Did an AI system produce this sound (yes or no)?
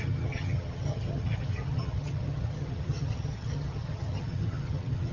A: yes